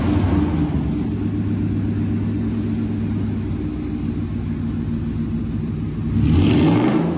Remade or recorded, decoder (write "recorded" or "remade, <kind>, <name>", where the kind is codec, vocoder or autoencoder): recorded